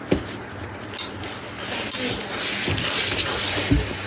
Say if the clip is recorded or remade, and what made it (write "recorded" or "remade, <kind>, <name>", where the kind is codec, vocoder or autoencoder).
recorded